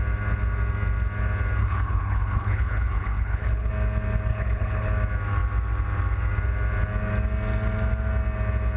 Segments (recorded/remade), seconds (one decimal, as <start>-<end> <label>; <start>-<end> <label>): 0.0-1.6 recorded; 1.6-3.7 remade; 3.7-4.3 recorded; 4.3-4.9 remade; 4.9-8.8 recorded